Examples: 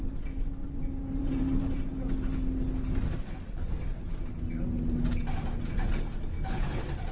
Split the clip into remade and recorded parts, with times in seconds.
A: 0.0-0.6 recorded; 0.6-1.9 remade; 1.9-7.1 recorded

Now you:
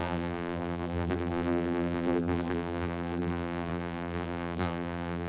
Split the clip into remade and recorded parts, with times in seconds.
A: 0.0-5.3 remade

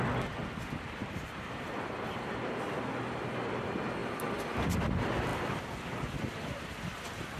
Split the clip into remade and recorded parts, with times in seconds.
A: 0.0-1.0 recorded; 1.0-2.4 remade; 2.4-7.4 recorded

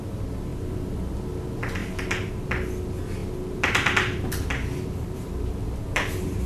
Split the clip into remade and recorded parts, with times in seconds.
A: 0.0-0.5 recorded; 0.5-1.1 remade; 1.1-1.8 recorded; 1.8-2.3 remade; 2.3-3.2 recorded; 3.2-6.5 remade